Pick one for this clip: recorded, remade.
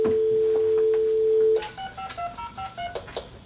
recorded